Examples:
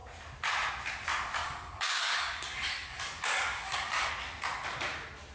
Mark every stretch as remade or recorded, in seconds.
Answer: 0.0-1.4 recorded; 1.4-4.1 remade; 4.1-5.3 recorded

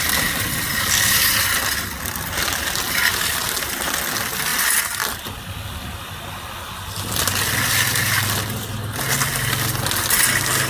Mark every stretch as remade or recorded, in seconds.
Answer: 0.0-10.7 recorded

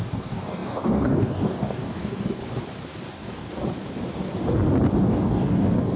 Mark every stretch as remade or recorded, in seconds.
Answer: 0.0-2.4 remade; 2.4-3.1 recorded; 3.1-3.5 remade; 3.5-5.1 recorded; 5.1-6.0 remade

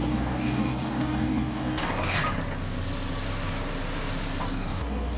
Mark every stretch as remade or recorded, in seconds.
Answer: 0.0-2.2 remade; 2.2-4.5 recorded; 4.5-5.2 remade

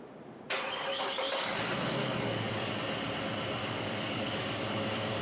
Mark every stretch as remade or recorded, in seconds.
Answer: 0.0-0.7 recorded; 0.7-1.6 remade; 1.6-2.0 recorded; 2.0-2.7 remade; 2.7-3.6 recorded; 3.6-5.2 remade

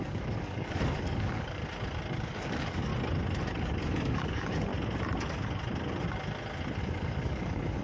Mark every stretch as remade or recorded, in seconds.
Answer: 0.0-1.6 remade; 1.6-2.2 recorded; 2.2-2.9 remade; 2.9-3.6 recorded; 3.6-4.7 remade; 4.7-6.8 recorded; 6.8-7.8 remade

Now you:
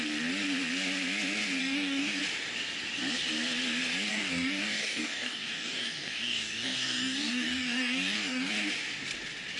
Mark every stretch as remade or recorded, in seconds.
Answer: 0.0-1.6 recorded; 1.6-2.2 remade; 2.2-4.1 recorded; 4.1-8.5 remade; 8.5-9.6 recorded